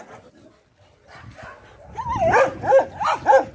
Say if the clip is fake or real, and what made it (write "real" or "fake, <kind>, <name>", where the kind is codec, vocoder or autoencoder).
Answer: real